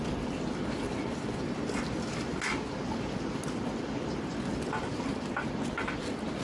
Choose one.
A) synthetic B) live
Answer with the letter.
B